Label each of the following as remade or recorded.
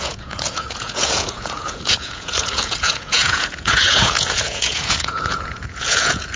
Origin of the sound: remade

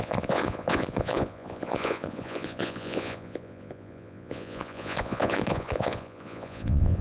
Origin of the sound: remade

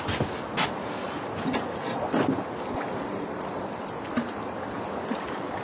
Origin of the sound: recorded